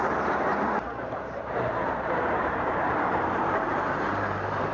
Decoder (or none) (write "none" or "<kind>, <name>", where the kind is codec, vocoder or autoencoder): vocoder, BigVGAN v2